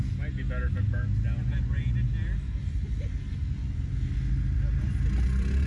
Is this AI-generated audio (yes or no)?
no